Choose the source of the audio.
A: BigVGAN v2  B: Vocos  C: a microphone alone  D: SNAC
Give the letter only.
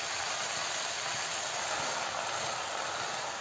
C